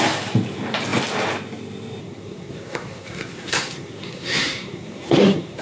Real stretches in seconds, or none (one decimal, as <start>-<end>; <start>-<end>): 0.0-2.0